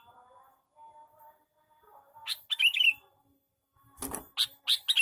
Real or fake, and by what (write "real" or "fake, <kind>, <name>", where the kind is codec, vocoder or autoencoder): real